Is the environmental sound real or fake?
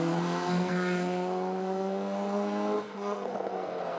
fake